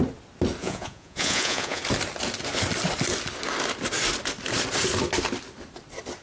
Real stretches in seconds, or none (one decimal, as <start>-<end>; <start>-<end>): 0.0-0.6; 1.8-6.2